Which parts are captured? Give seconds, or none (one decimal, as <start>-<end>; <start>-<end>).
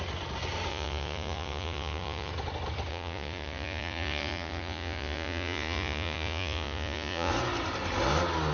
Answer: 0.0-0.7; 2.3-2.9; 7.3-8.5